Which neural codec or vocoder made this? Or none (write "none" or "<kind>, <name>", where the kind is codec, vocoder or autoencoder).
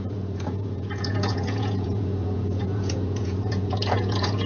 vocoder, Vocos